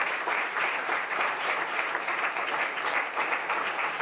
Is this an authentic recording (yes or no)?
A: no